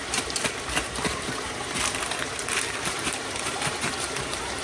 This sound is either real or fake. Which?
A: fake